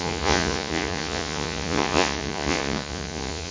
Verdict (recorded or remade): remade